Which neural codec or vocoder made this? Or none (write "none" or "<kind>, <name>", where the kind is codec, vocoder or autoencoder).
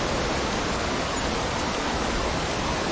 vocoder, BigVGAN v2